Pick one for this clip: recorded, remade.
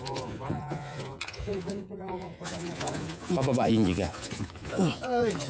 remade